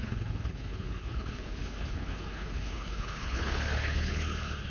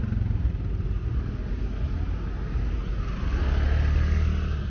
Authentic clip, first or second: second